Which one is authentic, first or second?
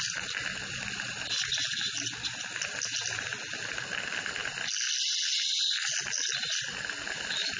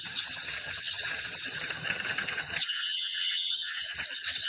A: first